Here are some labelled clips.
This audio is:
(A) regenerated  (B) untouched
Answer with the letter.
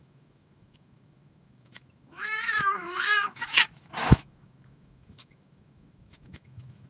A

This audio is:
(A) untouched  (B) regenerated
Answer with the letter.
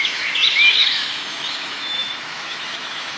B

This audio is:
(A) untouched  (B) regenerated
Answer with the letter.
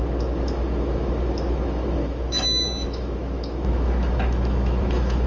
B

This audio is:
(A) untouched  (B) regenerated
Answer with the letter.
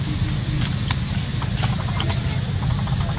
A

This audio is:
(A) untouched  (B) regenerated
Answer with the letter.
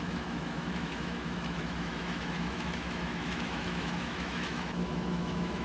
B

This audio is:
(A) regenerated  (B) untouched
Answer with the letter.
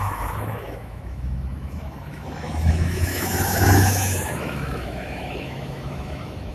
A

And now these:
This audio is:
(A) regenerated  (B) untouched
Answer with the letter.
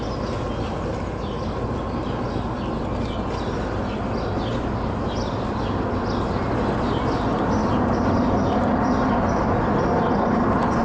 B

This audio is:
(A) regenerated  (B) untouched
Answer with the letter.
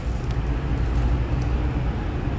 B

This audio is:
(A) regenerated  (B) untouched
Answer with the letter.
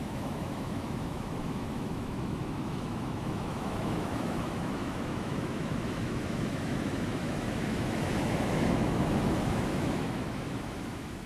A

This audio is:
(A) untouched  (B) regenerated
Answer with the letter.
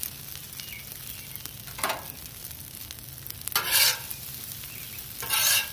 A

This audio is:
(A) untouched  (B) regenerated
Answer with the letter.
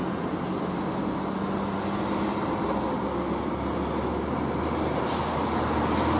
A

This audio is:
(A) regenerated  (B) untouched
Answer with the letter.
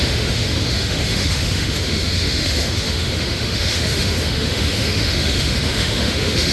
A